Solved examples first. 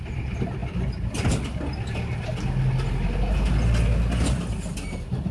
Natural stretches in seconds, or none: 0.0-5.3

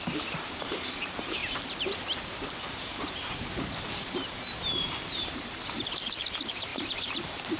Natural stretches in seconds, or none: none

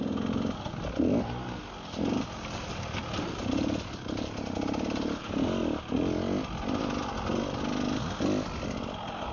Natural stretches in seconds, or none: 0.0-9.3